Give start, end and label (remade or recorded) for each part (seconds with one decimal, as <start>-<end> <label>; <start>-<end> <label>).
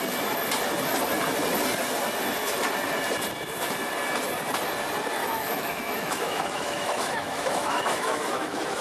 0.0-5.2 recorded; 5.2-8.8 remade